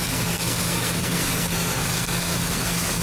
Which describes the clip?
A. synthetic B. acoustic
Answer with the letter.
A